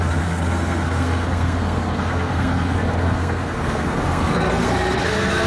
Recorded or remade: remade